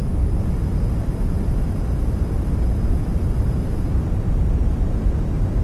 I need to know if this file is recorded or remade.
remade